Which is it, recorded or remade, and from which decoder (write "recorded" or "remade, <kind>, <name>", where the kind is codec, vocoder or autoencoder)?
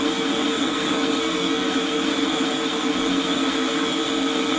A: remade, codec, SNAC